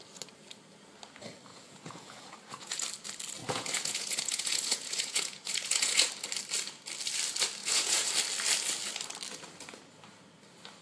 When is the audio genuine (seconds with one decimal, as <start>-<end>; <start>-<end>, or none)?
0.0-1.5; 2.8-3.4; 6.1-7.6; 8.1-10.8